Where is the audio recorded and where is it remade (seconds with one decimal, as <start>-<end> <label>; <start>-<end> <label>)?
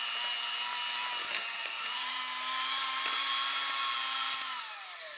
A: 0.0-1.6 recorded; 1.6-2.2 remade; 2.2-5.2 recorded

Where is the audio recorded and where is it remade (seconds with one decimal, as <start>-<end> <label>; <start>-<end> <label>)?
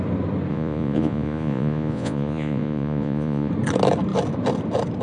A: 0.0-0.5 recorded; 0.5-3.5 remade; 3.5-5.0 recorded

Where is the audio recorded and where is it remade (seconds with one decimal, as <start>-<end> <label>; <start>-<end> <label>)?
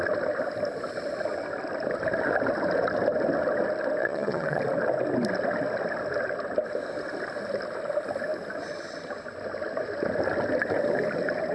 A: 0.0-4.0 recorded; 4.0-4.6 remade; 4.6-11.5 recorded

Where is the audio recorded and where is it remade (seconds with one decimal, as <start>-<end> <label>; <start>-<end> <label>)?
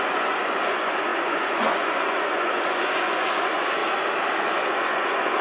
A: 0.0-3.8 remade; 3.8-4.4 recorded; 4.4-5.4 remade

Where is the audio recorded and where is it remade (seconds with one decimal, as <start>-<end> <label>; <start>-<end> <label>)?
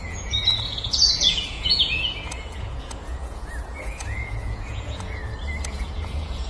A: 0.0-5.2 remade; 5.2-5.7 recorded; 5.7-6.5 remade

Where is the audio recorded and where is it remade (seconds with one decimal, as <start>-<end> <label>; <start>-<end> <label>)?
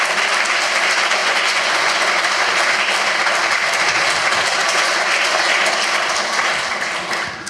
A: 0.0-1.2 recorded; 1.2-2.2 remade; 2.2-4.7 recorded; 4.7-5.6 remade; 5.6-7.5 recorded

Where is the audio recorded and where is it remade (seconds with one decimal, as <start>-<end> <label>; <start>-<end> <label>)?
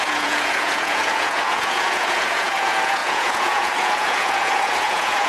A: 0.0-5.3 remade